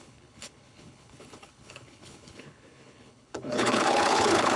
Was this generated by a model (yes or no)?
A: yes